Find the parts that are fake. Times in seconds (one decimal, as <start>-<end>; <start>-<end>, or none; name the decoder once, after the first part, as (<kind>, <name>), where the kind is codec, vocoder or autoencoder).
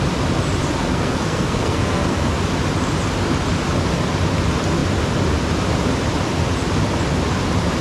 0.8-2.4 (codec, SNAC)